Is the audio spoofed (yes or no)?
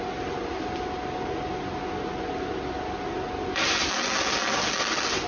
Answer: no